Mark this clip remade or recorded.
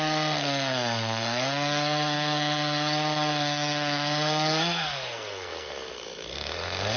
remade